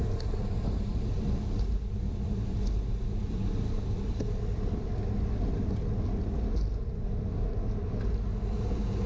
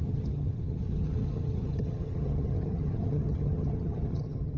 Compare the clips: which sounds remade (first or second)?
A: second